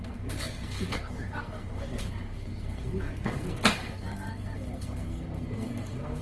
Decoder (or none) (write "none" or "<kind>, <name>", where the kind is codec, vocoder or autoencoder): codec, SNAC